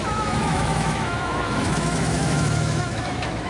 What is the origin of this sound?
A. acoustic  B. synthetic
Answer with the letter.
B